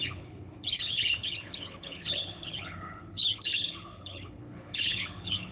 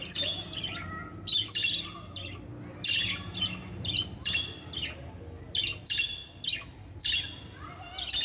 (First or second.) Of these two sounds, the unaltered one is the second